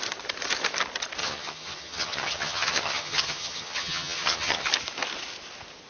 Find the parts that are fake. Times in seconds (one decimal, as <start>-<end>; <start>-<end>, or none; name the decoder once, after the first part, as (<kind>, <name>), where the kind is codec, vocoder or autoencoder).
1.2-4.7 (vocoder, HiFi-GAN)